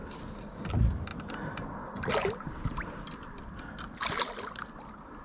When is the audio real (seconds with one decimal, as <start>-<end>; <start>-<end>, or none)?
0.0-5.2